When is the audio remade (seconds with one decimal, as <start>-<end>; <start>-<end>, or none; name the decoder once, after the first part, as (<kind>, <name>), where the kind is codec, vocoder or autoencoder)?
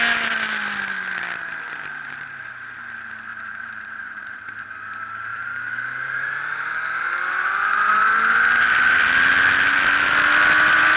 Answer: 2.0-2.8 (vocoder, BigVGAN v2); 3.3-4.5; 5.3-7.9